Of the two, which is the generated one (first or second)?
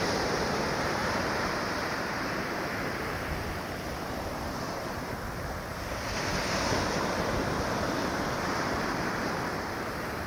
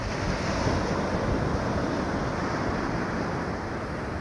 first